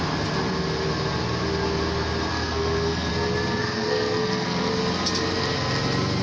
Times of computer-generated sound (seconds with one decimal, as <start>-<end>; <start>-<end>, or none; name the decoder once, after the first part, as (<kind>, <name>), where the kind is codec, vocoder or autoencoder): 2.3-3.1 (codec, SNAC); 3.6-4.7